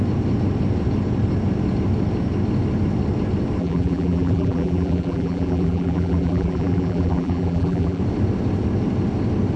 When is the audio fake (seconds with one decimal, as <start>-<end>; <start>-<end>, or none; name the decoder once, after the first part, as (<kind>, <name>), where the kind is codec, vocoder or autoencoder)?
3.6-8.0 (vocoder, BigVGAN v2)